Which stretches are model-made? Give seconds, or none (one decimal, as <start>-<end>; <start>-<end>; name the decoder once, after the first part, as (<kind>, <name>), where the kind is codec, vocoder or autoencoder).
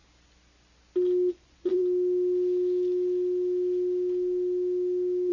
1.3-1.8 (vocoder, Vocos)